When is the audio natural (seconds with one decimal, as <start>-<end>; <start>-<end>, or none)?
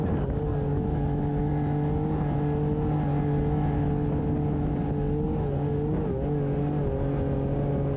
0.0-0.7; 1.5-8.0